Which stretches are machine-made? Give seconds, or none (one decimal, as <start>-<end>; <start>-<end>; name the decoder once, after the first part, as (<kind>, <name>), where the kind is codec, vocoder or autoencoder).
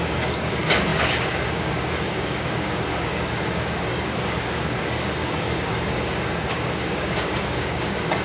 0.0-8.2 (codec, DAC)